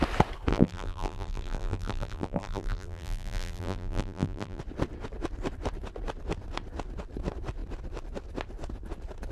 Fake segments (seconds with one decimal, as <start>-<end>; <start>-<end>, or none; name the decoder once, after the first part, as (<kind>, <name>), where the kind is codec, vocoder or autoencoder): 0.5-4.6 (vocoder, BigVGAN v2)